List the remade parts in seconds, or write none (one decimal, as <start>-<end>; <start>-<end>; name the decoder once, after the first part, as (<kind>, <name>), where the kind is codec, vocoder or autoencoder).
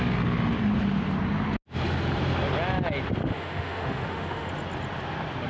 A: 3.2-4.5 (autoencoder, DAC-VAE)